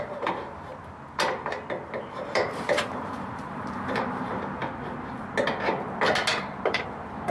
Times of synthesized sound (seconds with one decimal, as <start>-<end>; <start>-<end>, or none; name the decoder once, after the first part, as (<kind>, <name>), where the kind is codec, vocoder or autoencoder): 0.0-0.7 (vocoder, BigVGAN v2); 2.0-4.6; 6.7-7.3

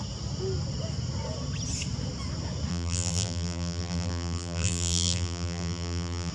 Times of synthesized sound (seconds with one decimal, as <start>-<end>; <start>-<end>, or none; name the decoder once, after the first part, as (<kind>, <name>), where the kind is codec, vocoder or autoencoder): 2.7-6.3 (vocoder, BigVGAN v2)

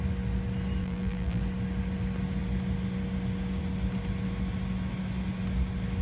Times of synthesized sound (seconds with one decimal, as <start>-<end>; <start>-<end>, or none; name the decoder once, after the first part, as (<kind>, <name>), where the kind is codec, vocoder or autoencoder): 0.8-1.4 (vocoder, BigVGAN v2)

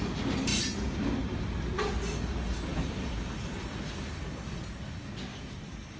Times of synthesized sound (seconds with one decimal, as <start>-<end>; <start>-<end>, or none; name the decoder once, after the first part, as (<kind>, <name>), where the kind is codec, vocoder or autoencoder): 2.7-3.7 (vocoder, BigVGAN v2)

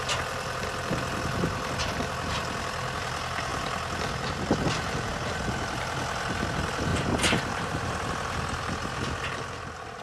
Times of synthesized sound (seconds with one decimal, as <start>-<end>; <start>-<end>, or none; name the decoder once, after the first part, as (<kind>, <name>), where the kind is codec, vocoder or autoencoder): 6.9-8.1 (vocoder, BigVGAN v2)